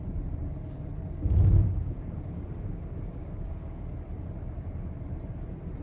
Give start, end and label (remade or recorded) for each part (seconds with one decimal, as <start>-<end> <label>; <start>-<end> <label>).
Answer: 0.0-1.0 recorded; 1.0-3.8 remade; 3.8-5.8 recorded